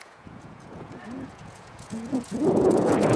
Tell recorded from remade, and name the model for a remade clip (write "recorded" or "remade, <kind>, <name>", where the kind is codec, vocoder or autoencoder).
remade, vocoder, Vocos